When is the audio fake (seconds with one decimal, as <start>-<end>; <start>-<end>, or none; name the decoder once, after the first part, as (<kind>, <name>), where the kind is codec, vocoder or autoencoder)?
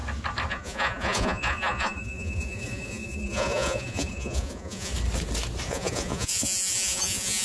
0.5-4.9 (vocoder, Vocos); 5.7-7.4